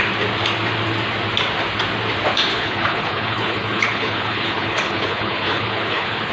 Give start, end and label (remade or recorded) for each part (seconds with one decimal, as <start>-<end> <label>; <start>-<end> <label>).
0.0-2.5 recorded; 2.5-6.3 remade